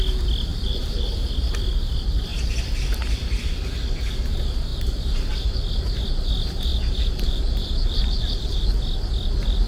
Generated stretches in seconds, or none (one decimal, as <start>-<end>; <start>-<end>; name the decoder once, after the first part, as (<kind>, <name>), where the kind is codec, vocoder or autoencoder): 0.5-1.3 (vocoder, BigVGAN v2); 6.7-8.8

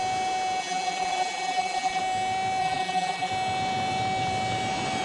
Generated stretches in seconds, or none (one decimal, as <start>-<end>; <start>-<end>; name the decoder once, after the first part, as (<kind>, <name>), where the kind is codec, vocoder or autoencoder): 0.6-2.0 (vocoder, BigVGAN v2); 2.6-3.3